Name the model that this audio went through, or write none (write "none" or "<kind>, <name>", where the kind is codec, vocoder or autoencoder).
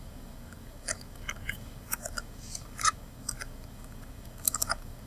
codec, DAC